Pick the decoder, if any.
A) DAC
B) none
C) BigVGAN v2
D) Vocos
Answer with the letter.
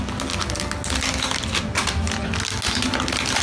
B